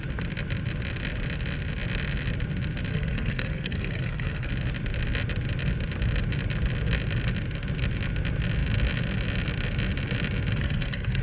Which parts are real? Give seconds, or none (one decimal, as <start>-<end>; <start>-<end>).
0.0-2.9; 4.5-10.5